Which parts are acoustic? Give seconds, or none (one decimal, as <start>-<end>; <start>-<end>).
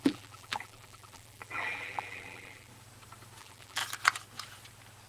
2.7-3.4; 3.8-5.1